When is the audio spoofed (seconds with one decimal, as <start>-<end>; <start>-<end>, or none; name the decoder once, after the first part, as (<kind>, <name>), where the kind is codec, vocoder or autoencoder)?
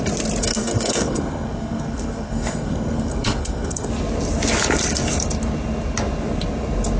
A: 0.4-3.9 (codec, SNAC)